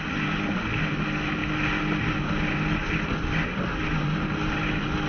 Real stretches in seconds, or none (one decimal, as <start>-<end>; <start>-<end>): 0.0-5.1